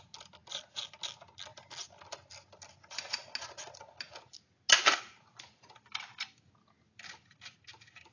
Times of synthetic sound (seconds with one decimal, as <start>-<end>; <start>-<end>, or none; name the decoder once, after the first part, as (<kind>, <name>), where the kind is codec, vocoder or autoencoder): none